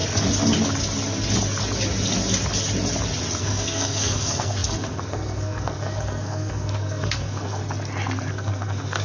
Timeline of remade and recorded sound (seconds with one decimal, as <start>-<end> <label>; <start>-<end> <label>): 0.0-3.4 recorded; 3.4-7.6 remade; 7.6-8.3 recorded; 8.3-9.0 remade